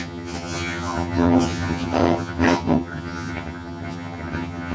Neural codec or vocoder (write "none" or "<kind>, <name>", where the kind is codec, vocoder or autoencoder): vocoder, HiFi-GAN